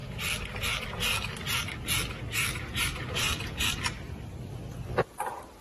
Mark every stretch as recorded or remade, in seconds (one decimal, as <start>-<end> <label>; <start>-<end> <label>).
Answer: 0.0-2.8 recorded; 2.8-5.6 remade